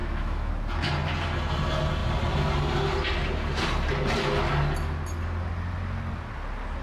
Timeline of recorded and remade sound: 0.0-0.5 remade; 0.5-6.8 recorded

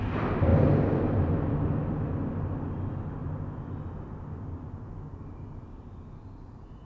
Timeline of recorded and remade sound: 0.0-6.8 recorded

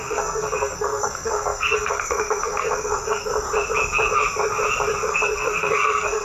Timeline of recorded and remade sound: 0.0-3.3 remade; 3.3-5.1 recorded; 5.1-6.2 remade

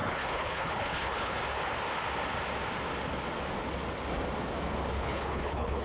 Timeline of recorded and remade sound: 0.0-1.4 remade; 1.4-4.9 recorded; 4.9-5.8 remade

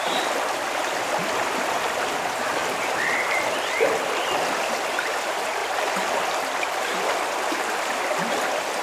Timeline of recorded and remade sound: 0.0-5.6 remade; 5.6-7.0 recorded; 7.0-8.8 remade

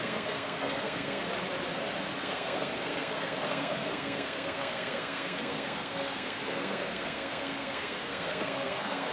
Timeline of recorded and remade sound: 0.0-1.3 remade; 1.3-2.2 recorded; 2.2-9.1 remade